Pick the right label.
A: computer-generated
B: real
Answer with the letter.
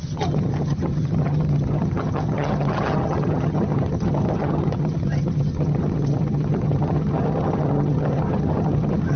A